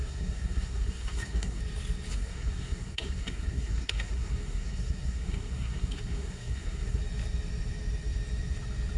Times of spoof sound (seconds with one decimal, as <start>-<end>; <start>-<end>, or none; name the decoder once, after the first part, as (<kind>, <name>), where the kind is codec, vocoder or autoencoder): 0.0-1.6 (codec, SNAC); 2.1-7.0